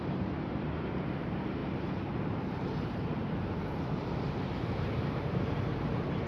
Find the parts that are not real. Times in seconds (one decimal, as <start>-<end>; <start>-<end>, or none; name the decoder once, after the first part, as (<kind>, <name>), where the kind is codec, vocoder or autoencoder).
0.0-6.3 (vocoder, BigVGAN v2)